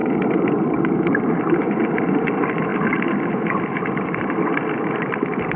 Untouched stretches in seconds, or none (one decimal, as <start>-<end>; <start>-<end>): 2.7-3.6